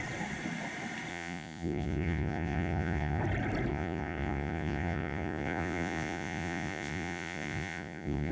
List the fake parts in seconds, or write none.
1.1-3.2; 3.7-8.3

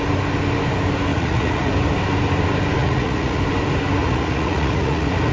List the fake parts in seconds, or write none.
1.1-1.7; 2.8-3.4; 4.0-5.3

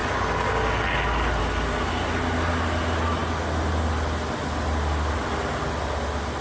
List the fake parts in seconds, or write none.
none

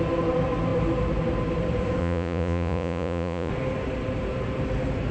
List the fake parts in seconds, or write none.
2.0-3.5

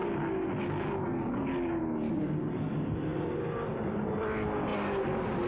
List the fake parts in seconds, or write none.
none

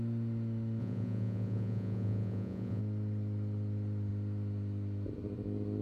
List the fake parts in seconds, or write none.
0.8-2.8

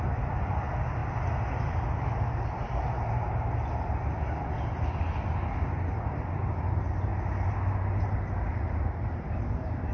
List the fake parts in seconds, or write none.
none